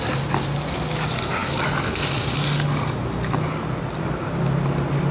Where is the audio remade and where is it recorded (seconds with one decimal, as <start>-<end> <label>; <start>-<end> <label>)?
0.0-5.1 recorded